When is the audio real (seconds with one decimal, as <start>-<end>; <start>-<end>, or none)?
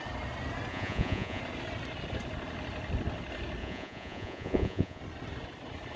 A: 0.0-0.7; 1.4-3.6; 5.0-6.0